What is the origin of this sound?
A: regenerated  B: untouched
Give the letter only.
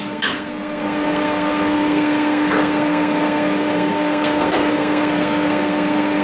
A